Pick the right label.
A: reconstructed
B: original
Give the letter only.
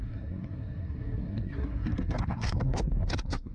A